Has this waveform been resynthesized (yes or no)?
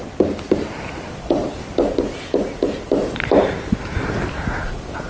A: no